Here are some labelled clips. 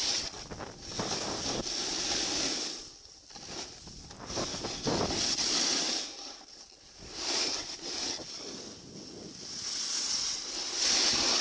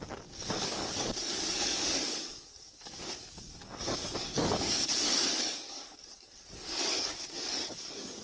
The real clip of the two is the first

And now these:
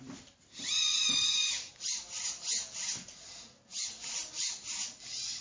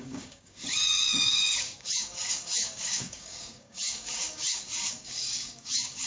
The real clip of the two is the first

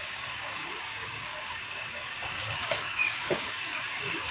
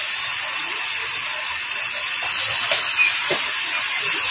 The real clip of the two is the second